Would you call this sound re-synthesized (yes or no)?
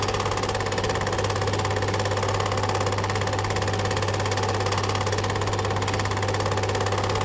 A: no